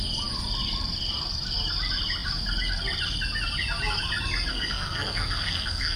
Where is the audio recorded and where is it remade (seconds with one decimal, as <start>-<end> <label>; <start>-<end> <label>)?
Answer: 0.0-4.5 recorded; 4.5-6.0 remade